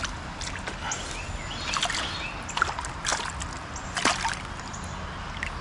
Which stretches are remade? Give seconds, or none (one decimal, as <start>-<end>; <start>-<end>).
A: none